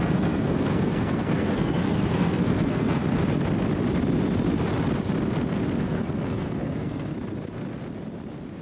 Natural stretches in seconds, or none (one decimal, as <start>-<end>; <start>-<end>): 3.0-5.8; 7.1-8.6